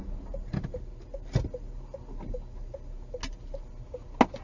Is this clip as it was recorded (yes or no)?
yes